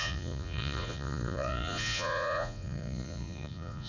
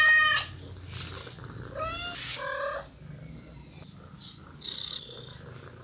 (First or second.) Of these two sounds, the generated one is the first